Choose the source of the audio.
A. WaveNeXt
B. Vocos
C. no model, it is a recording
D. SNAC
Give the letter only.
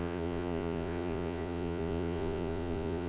B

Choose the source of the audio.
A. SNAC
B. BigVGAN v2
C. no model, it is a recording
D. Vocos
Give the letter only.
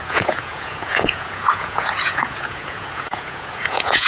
D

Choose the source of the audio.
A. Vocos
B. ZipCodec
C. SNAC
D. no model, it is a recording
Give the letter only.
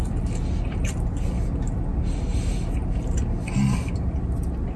D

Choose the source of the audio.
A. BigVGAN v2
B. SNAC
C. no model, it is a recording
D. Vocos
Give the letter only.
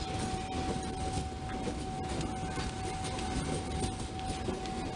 C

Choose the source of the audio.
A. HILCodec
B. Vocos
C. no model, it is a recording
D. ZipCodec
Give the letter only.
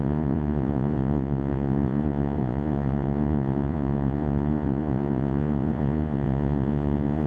B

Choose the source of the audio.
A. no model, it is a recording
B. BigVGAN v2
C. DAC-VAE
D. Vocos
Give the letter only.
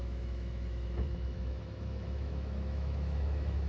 C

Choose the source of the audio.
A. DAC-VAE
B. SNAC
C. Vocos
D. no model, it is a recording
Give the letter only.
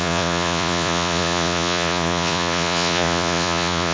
C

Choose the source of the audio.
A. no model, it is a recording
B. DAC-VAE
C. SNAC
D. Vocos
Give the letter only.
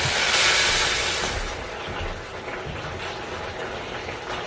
A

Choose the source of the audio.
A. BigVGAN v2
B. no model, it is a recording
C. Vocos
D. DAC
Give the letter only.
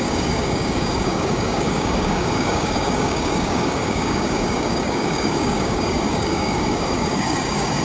D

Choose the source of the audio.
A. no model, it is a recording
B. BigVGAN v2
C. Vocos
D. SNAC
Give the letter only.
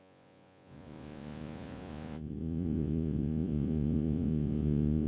C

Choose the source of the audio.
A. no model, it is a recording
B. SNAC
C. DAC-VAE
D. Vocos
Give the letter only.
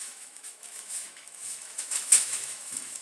C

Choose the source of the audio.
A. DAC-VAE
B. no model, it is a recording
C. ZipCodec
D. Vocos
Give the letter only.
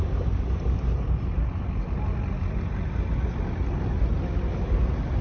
B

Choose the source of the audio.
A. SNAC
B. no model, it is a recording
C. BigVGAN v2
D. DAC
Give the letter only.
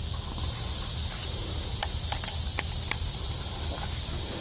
B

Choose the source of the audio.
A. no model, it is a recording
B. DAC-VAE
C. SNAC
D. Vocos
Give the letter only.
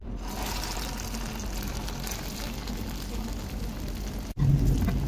A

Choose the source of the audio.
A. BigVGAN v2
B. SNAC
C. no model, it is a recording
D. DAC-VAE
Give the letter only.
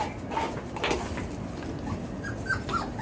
C